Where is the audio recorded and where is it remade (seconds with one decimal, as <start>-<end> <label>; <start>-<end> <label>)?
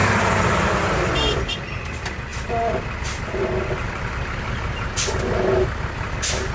0.0-1.8 remade; 1.8-2.3 recorded; 2.3-4.5 remade; 4.5-6.5 recorded